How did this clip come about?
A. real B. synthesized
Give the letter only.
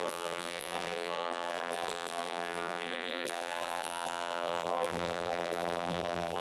B